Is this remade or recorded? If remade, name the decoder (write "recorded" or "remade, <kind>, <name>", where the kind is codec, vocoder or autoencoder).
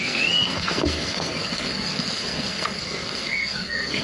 remade, codec, SNAC